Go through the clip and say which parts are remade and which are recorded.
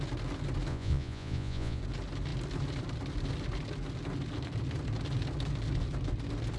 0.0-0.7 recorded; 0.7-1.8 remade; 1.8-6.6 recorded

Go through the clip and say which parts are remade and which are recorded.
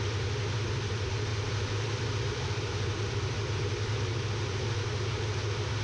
0.0-1.3 recorded; 1.3-4.8 remade; 4.8-5.8 recorded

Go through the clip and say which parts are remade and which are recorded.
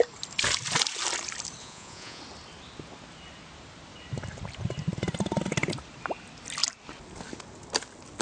0.0-1.6 recorded; 1.6-2.2 remade; 2.2-8.2 recorded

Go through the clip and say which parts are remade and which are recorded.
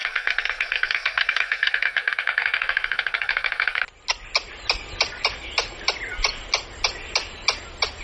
0.0-3.8 remade; 3.8-8.0 recorded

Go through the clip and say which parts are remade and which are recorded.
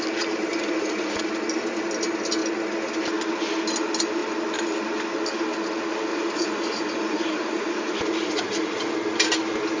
0.0-0.5 recorded; 0.5-1.2 remade; 1.2-6.1 recorded; 6.1-8.9 remade; 8.9-9.8 recorded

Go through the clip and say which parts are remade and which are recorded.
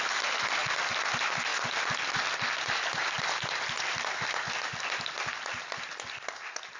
0.0-6.8 recorded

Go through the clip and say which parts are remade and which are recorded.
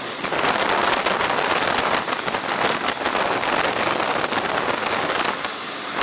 0.0-6.0 recorded